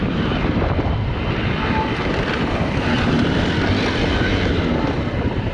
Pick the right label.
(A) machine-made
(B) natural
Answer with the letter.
B